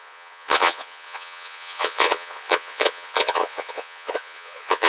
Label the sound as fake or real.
fake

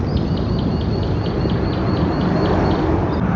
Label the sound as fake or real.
real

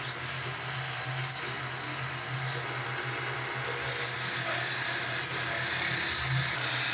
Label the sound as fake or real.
real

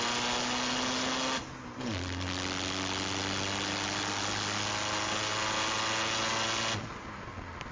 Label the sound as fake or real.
real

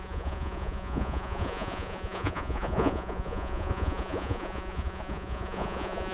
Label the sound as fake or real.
fake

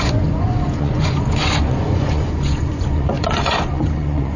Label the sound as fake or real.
fake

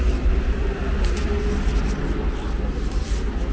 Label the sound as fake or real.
real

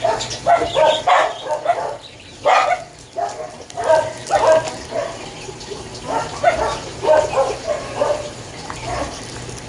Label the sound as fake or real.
real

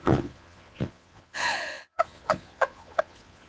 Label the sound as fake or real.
fake